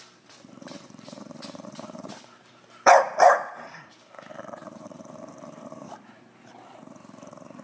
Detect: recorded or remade remade